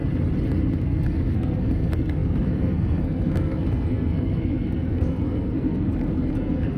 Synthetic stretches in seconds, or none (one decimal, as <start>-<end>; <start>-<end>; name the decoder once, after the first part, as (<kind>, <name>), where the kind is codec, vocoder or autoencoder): 0.8-6.8 (codec, SNAC)